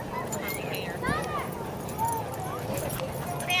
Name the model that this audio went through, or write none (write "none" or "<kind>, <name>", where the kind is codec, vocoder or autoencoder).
none